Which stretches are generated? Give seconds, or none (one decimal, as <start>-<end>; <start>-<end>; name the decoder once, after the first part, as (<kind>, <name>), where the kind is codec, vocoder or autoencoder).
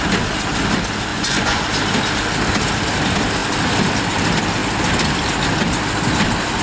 1.1-1.6 (vocoder, Vocos)